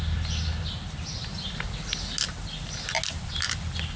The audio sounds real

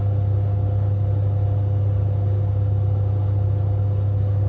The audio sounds real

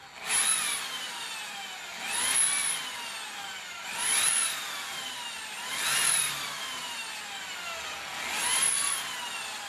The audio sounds real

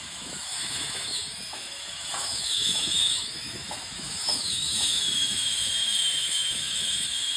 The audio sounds fake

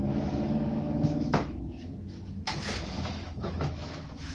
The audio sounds fake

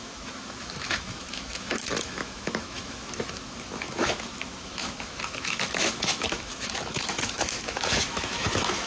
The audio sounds fake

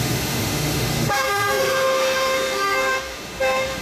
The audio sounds fake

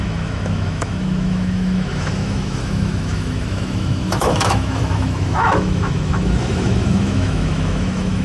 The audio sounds fake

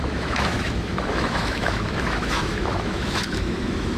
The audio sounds fake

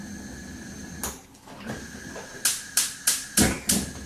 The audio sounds real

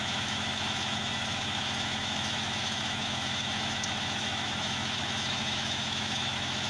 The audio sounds fake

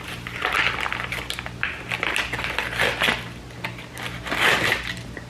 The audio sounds real